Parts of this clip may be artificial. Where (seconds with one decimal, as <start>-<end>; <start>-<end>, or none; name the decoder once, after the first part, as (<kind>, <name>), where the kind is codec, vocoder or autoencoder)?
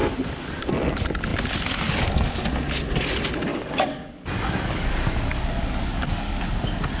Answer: 3.5-6.4 (codec, DAC)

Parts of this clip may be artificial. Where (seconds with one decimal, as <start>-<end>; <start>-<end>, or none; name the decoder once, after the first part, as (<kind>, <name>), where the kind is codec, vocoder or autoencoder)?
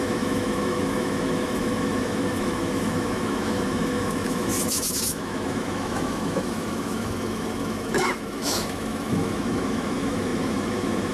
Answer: 0.0-11.1 (autoencoder, DAC-VAE)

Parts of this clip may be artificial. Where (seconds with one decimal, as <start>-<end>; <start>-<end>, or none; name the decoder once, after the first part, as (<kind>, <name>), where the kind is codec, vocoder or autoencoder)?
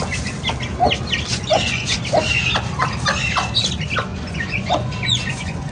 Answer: 1.3-2.0 (vocoder, Vocos); 4.1-5.7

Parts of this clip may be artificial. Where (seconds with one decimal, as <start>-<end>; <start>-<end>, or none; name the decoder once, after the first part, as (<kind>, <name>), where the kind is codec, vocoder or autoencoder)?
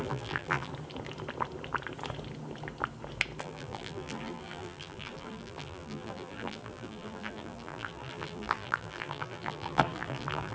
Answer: 0.0-0.7 (vocoder, BigVGAN v2); 3.4-10.5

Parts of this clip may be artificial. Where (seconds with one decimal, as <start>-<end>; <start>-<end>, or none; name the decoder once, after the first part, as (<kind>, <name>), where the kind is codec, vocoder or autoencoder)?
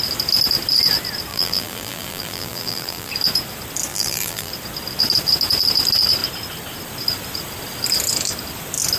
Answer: 1.3-3.1 (vocoder, BigVGAN v2); 3.9-4.5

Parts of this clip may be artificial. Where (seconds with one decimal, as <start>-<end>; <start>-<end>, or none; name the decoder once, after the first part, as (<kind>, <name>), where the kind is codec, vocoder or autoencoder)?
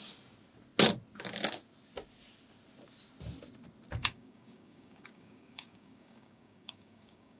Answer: 4.0-7.4 (codec, DAC)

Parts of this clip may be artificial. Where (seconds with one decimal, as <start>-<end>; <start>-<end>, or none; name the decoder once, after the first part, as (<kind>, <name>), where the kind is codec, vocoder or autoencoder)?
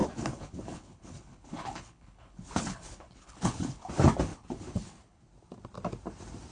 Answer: 0.0-3.9 (codec, HILCodec); 4.3-5.2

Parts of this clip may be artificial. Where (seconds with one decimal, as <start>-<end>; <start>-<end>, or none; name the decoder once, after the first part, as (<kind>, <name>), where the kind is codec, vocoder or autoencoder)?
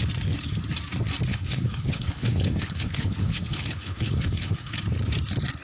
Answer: 1.3-4.7 (codec, HILCodec)